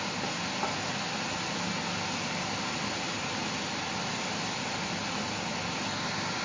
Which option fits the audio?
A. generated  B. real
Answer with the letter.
B